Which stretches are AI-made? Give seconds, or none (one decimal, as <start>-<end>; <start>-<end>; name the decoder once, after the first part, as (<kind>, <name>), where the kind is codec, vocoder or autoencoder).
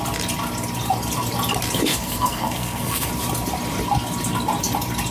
1.9-3.1 (codec, SNAC)